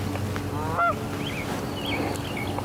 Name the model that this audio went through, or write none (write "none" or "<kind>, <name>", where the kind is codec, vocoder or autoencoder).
none